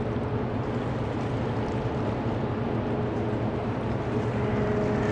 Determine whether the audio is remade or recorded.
recorded